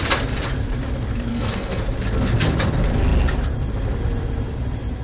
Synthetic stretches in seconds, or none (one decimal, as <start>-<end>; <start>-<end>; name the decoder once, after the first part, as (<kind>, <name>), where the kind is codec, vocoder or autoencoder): 1.3-1.8 (codec, SNAC)